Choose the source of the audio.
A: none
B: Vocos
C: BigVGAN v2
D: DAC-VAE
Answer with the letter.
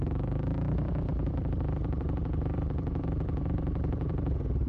C